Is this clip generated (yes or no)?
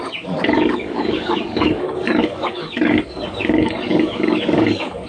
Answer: yes